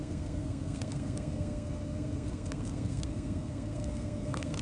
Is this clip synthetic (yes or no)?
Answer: yes